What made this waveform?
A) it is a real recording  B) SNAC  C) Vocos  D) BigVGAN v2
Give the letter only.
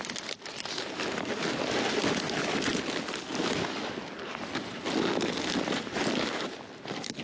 A